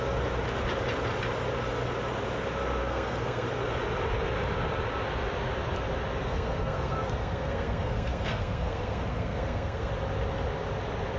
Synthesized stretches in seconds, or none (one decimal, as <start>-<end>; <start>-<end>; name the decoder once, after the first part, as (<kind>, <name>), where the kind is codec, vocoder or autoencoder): 2.8-3.5 (codec, SNAC); 6.2-9.9